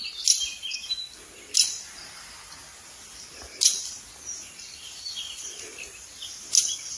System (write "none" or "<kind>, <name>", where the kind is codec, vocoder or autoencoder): none